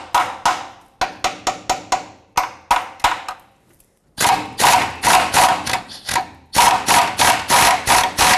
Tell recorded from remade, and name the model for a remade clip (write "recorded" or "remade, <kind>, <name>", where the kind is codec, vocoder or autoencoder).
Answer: recorded